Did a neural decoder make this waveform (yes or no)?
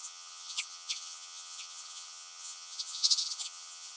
yes